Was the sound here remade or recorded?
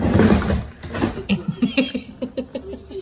recorded